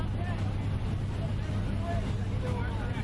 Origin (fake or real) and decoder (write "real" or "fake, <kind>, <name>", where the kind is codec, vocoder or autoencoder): real